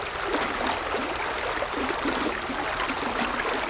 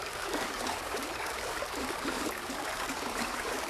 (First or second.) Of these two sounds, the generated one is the second